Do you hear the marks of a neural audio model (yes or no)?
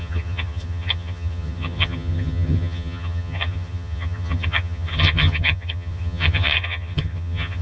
yes